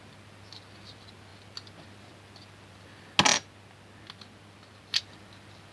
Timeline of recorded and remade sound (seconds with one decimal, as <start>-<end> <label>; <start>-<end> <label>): 0.0-5.7 recorded